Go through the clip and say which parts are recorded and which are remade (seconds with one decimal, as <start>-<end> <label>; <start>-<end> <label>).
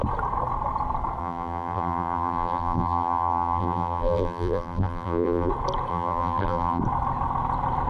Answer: 0.0-1.2 recorded; 1.2-5.5 remade; 5.5-5.9 recorded; 5.9-6.8 remade; 6.8-7.9 recorded